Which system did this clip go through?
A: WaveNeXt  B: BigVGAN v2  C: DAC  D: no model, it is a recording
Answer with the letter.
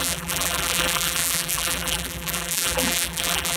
B